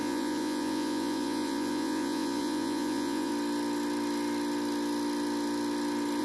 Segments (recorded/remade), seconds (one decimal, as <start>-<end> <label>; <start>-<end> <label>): 0.0-3.3 remade; 3.3-6.2 recorded